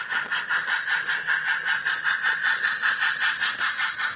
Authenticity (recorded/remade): recorded